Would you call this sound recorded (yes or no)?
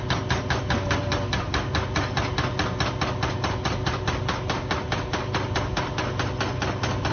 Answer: yes